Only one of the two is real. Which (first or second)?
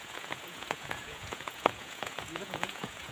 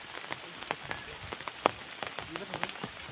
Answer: second